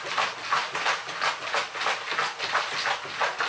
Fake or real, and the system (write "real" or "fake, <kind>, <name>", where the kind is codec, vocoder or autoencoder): real